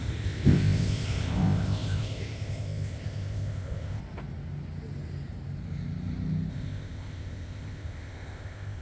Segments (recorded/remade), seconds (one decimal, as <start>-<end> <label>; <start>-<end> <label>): 0.0-4.0 remade; 4.0-6.5 recorded; 6.5-8.8 remade